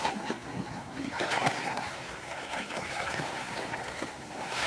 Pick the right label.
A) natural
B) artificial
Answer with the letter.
B